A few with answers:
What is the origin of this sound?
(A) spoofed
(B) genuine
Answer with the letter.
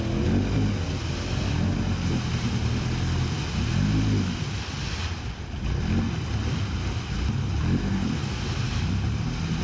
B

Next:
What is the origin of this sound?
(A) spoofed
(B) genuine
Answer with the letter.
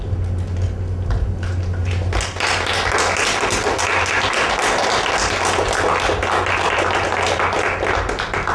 B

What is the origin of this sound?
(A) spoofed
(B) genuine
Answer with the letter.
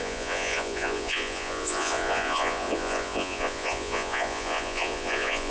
A